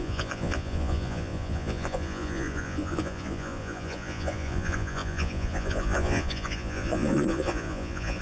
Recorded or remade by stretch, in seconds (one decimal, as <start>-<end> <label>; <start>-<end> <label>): 0.0-8.2 remade